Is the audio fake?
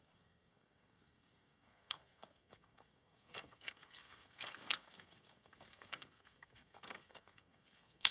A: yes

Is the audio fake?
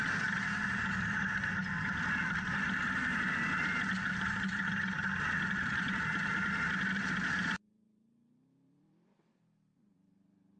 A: no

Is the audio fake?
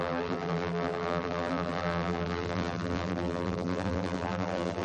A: yes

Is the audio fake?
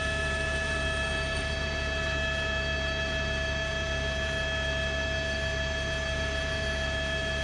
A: yes